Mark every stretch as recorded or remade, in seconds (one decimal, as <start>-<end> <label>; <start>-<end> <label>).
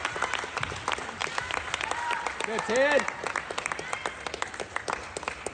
0.0-5.5 recorded